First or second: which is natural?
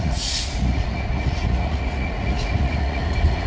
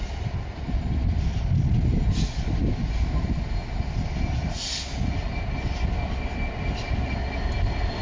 second